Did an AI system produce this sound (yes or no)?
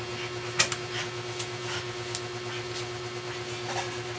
no